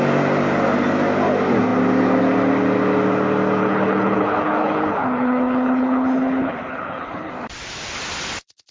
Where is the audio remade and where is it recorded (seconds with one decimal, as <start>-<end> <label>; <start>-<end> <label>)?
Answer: 0.0-3.6 recorded; 3.6-7.3 remade; 7.3-8.7 recorded